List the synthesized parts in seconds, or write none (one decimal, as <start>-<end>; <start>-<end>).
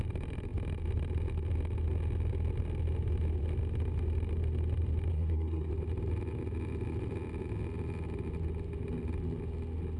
5.1-5.7